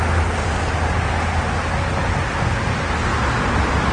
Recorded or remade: recorded